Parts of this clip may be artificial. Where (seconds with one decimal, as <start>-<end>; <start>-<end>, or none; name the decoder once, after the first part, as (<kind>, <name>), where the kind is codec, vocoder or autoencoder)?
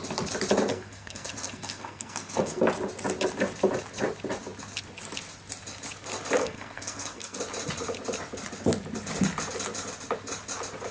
0.7-2.6 (codec, SNAC); 6.4-7.4